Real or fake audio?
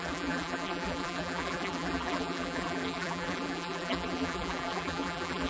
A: fake